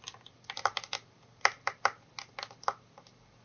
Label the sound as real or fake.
real